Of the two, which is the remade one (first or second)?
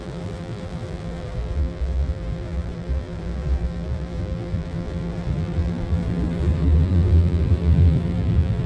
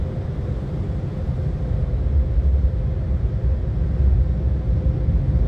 first